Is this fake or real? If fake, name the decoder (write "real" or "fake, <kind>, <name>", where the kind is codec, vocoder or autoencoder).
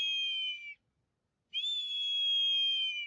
real